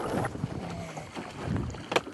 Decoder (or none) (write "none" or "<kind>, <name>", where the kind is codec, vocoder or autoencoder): none